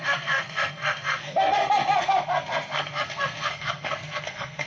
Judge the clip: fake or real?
fake